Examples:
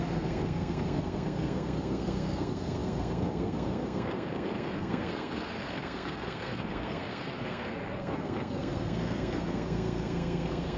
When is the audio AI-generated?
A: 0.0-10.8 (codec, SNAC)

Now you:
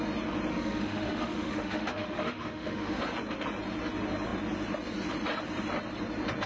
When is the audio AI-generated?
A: 0.5-3.0 (autoencoder, DAC-VAE)